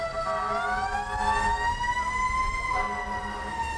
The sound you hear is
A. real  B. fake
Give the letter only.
A